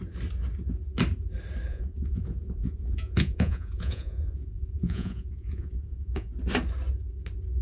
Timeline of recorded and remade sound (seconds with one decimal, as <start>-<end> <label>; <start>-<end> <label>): 0.0-1.7 recorded; 1.7-6.3 remade; 6.3-7.6 recorded